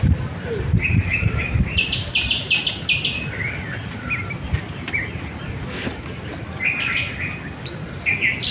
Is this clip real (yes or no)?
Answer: yes